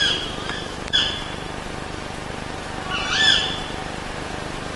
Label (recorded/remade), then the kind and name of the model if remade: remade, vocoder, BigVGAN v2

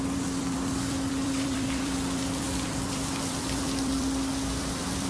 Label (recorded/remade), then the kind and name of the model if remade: remade, vocoder, BigVGAN v2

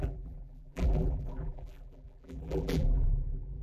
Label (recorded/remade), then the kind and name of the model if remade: remade, vocoder, BigVGAN v2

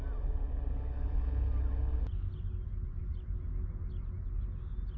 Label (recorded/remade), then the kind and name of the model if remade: recorded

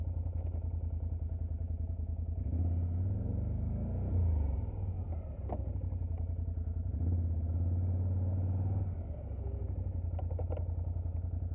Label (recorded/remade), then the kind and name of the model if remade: recorded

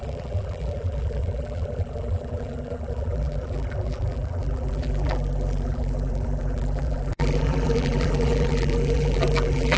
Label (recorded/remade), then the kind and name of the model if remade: remade, vocoder, BigVGAN v2